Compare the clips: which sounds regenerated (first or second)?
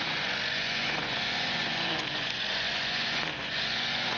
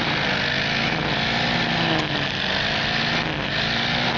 first